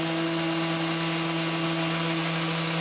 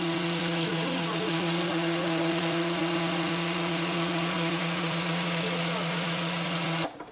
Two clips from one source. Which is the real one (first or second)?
first